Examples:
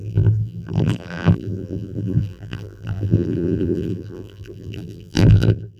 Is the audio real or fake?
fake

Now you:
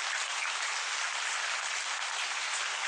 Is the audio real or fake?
real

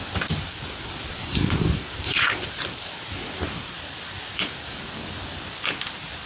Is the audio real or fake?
fake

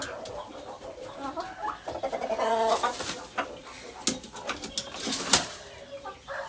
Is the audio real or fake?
real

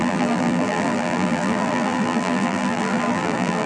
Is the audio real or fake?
fake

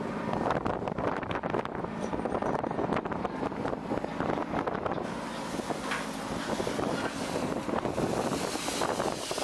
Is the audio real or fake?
real